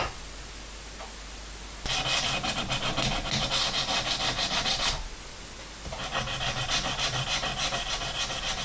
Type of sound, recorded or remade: recorded